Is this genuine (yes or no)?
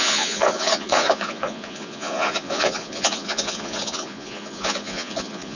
no